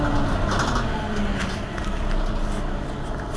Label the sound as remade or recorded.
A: recorded